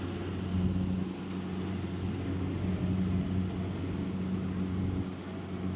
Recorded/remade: recorded